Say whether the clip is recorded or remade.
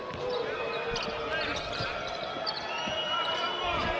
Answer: recorded